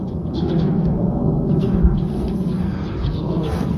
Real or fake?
fake